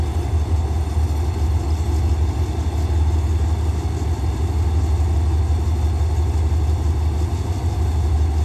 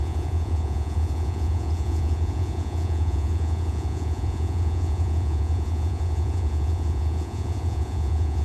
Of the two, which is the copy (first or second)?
second